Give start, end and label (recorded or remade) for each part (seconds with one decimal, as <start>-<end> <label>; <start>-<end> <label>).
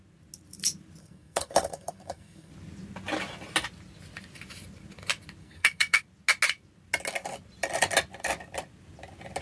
0.0-1.0 recorded; 1.0-2.5 remade; 2.5-5.4 recorded; 5.4-6.0 remade; 6.0-9.4 recorded